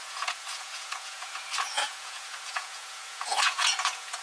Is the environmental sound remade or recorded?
remade